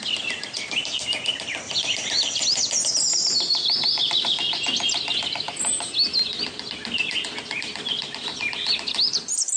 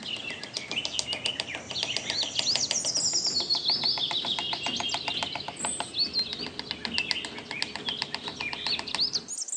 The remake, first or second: first